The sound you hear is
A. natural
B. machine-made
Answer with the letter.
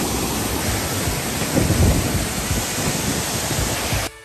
A